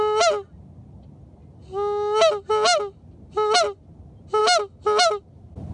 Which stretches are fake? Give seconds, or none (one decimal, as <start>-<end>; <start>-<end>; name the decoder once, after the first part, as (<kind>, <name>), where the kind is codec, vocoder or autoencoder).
none